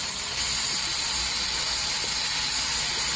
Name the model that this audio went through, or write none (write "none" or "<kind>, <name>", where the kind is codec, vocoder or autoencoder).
none